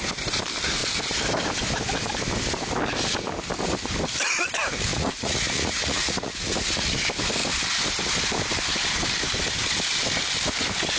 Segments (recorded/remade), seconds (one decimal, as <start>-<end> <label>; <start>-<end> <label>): 0.0-4.9 recorded; 4.9-6.9 remade; 6.9-11.0 recorded